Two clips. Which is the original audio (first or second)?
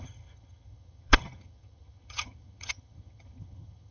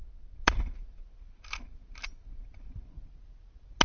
second